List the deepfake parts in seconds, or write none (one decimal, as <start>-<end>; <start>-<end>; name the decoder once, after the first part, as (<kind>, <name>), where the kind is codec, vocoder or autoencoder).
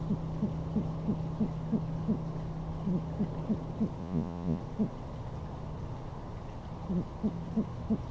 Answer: 4.0-4.6 (vocoder, Vocos)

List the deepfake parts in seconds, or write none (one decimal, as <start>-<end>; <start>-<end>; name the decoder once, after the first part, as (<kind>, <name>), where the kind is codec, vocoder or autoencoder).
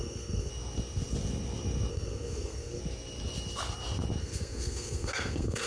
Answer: 0.0-0.5 (codec, SNAC); 1.9-2.8; 4.2-5.7